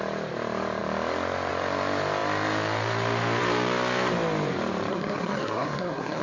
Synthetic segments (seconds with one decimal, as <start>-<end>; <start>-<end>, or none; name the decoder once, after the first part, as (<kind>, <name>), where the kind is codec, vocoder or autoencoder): 4.9-6.2 (codec, SNAC)